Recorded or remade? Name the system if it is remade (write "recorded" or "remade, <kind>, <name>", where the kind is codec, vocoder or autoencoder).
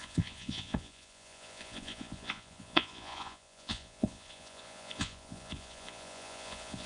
remade, vocoder, Vocos